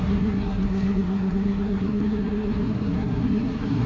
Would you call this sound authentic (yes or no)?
no